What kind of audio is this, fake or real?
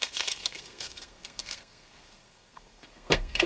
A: fake